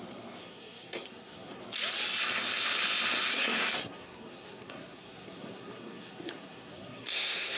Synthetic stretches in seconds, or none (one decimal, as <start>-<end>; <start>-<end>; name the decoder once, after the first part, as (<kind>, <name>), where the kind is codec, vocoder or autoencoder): 0.4-1.6 (codec, SNAC); 3.3-7.6